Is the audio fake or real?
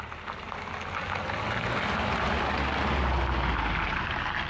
real